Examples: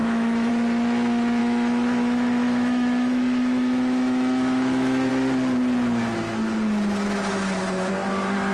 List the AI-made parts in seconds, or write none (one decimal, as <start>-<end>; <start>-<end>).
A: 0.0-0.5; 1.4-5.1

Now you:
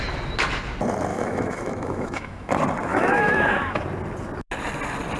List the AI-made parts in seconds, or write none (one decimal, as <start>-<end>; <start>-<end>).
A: 1.1-2.5; 2.9-3.8

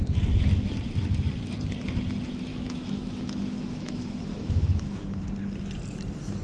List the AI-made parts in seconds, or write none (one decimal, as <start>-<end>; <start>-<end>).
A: 2.5-5.2

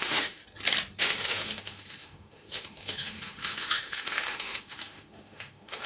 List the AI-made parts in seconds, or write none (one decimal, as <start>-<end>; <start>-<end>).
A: 0.0-0.4; 1.0-5.9

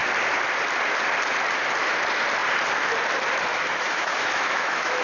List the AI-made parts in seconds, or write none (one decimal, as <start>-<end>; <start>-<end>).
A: 3.5-5.0

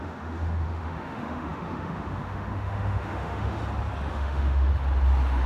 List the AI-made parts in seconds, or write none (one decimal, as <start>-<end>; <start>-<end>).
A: 0.0-3.6; 4.1-4.7